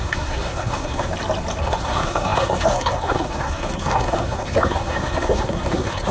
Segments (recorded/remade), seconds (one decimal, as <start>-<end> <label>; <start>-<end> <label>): 0.0-1.1 remade; 1.1-1.6 recorded; 1.6-6.1 remade